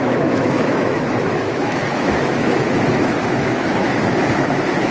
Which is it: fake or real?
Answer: fake